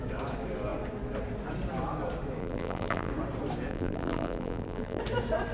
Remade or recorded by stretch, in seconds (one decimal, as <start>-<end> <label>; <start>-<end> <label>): 0.0-2.4 recorded; 2.4-3.1 remade; 3.1-3.7 recorded; 3.7-5.0 remade; 5.0-5.5 recorded